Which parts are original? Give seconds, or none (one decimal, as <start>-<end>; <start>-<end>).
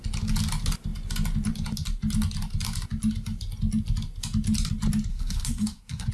0.0-5.1